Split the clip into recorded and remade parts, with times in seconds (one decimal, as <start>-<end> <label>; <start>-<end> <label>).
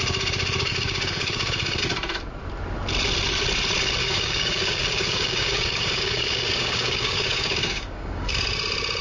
0.0-0.7 recorded; 0.7-1.8 remade; 1.8-4.0 recorded; 4.0-8.3 remade; 8.3-9.0 recorded